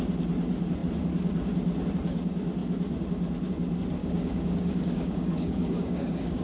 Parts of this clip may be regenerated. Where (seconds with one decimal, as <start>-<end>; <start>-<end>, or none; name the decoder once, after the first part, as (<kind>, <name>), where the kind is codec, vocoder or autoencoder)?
4.0-6.4 (codec, DAC)